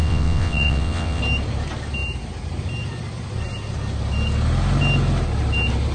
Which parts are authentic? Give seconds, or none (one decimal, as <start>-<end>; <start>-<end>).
1.2-5.9